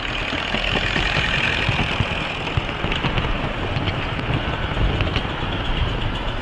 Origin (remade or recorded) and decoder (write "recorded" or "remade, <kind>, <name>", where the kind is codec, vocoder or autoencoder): recorded